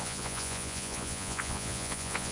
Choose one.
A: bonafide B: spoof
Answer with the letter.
B